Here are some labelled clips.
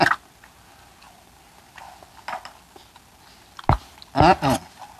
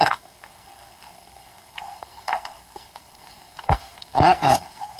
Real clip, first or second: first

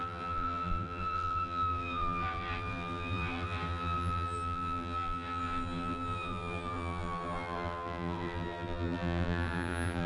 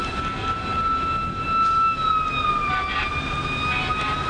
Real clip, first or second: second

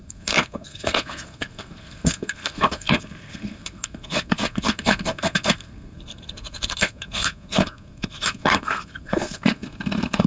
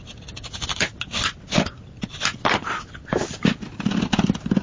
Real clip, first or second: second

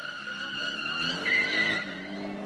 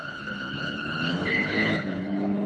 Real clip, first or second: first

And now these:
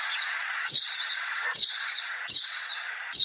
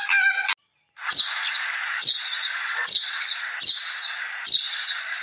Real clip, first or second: second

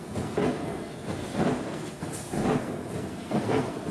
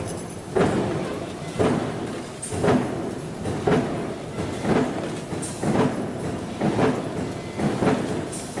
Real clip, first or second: second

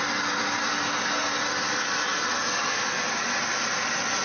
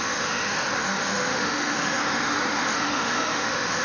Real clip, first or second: first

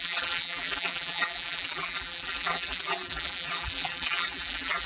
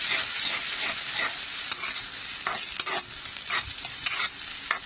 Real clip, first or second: second